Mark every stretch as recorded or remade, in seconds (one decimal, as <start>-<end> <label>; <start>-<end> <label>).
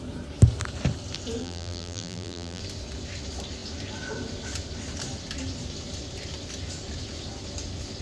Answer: 0.0-1.4 recorded; 1.4-2.6 remade; 2.6-8.0 recorded